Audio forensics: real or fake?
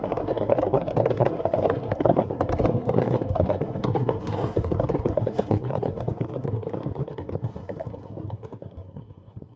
fake